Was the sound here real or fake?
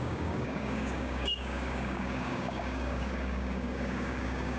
fake